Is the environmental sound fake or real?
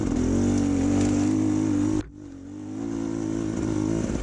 real